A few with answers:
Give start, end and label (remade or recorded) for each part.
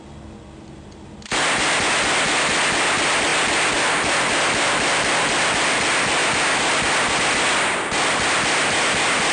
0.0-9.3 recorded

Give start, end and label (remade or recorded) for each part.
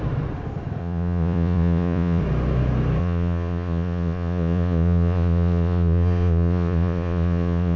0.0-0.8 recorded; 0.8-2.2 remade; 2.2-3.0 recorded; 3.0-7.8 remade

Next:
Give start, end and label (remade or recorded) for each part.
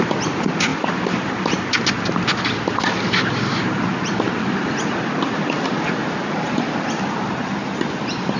0.0-8.4 recorded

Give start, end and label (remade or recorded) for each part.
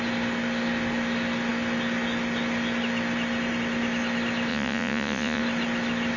0.0-4.5 recorded; 4.5-5.4 remade; 5.4-6.2 recorded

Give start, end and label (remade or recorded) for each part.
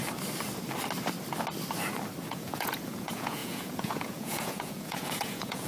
0.0-2.2 recorded; 2.2-5.7 remade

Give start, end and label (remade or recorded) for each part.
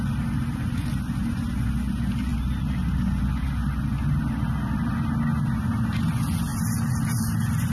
0.0-7.7 recorded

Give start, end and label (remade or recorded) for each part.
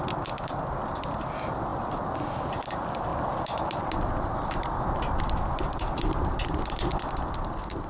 0.0-7.9 recorded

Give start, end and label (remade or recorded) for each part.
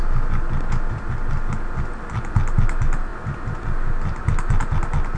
0.0-5.2 recorded